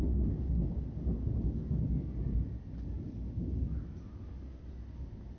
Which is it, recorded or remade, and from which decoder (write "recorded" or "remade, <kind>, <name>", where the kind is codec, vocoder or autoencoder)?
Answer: recorded